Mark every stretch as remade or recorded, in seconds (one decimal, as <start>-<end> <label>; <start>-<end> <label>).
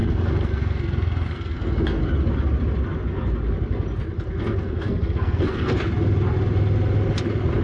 0.0-2.0 remade; 2.0-4.3 recorded; 4.3-5.8 remade; 5.8-7.6 recorded